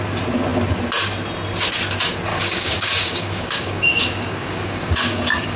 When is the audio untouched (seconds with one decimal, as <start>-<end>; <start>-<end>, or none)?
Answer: 0.0-2.3